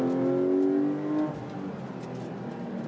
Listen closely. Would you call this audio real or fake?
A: real